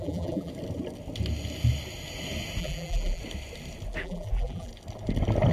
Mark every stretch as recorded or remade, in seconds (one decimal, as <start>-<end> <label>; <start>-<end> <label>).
0.0-0.5 remade; 0.5-2.6 recorded; 2.6-3.2 remade; 3.2-4.0 recorded; 4.0-4.7 remade; 4.7-5.5 recorded